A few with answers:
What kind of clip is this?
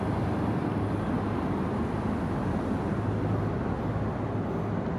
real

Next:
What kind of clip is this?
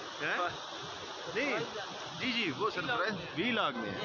real